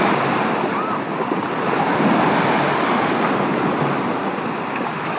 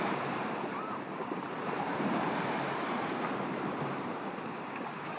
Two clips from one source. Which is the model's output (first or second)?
second